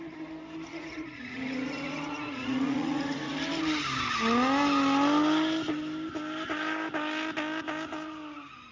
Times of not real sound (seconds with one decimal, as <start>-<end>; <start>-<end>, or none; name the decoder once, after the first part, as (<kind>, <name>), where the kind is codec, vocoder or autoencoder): 0.7-3.3 (vocoder, Vocos)